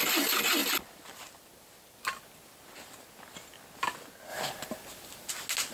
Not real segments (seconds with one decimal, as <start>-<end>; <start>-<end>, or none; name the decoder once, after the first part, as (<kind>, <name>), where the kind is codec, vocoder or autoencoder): 0.6-2.0 (vocoder, BigVGAN v2); 4.3-5.3